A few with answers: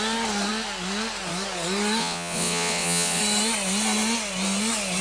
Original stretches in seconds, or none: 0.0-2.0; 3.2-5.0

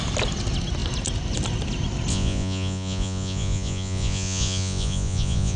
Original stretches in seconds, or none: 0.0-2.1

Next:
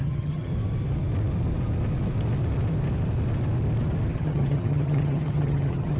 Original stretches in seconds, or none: 0.5-4.1

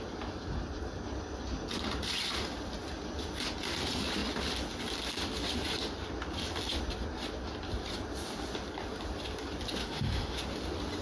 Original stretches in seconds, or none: 0.0-9.8; 10.4-11.0

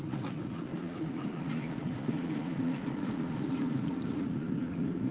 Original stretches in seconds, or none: none